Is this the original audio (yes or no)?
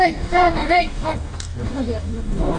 no